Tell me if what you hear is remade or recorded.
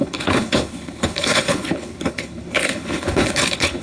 remade